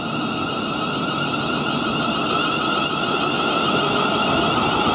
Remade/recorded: recorded